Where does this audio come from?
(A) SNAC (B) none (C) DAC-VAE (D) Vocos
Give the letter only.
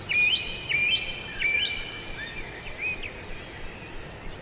B